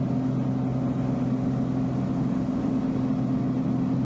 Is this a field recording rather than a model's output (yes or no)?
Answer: yes